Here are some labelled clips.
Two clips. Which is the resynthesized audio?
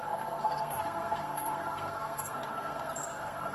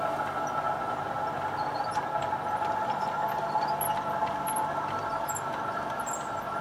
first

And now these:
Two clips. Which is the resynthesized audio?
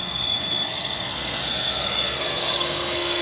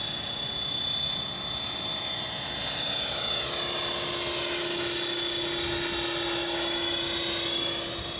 first